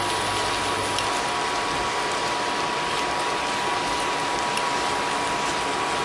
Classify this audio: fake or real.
real